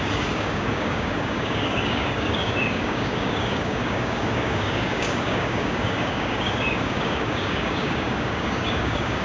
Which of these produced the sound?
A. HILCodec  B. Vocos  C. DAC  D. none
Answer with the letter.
C